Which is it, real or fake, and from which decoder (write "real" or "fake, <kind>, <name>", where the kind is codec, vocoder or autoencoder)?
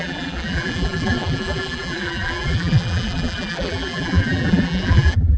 fake, vocoder, BigVGAN v2